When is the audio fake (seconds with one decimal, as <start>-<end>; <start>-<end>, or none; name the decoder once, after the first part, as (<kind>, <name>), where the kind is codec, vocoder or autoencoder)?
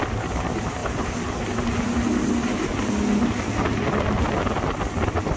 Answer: none